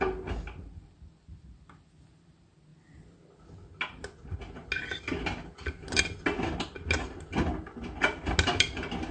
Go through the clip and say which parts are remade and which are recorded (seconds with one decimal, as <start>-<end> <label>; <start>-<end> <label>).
0.0-9.1 recorded